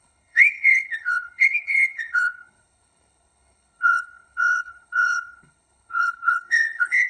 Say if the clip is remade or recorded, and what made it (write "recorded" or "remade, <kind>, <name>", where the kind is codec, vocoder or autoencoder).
remade, codec, HILCodec